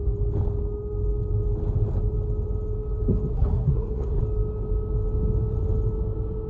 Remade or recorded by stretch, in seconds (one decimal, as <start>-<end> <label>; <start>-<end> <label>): 0.0-3.3 recorded; 3.3-4.2 remade; 4.2-6.5 recorded